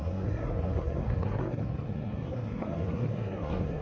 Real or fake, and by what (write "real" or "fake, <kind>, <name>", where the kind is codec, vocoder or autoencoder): fake, codec, SNAC